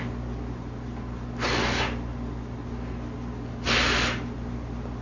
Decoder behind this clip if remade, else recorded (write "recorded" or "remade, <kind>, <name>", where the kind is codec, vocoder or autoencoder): recorded